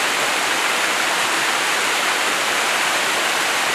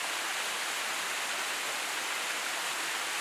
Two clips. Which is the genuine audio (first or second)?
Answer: second